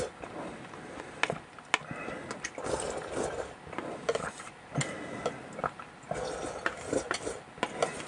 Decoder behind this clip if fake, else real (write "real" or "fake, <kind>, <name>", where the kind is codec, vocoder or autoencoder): real